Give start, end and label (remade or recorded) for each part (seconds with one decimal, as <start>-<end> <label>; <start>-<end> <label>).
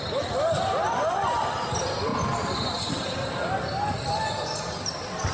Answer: 0.0-5.3 recorded